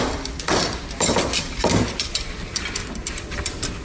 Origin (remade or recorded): remade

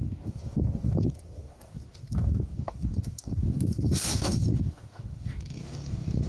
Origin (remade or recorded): remade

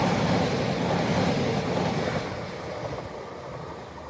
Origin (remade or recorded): recorded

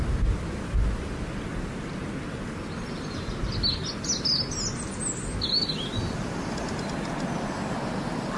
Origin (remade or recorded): recorded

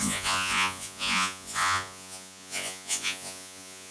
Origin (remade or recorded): remade